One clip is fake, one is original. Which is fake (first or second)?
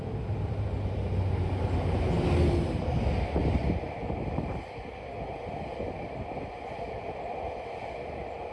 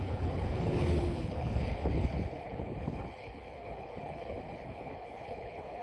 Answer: second